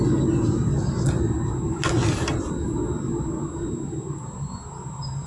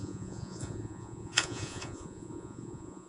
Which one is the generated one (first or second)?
second